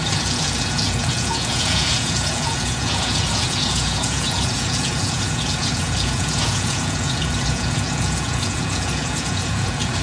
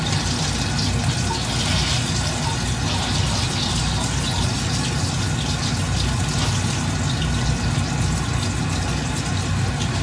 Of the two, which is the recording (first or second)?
second